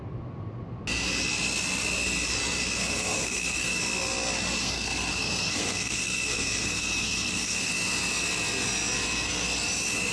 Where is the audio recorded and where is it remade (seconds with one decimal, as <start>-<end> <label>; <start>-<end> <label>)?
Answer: 0.0-2.8 recorded; 2.8-3.8 remade; 3.8-4.6 recorded; 4.6-7.7 remade; 7.7-10.1 recorded